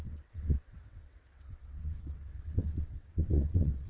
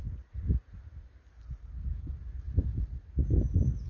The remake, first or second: first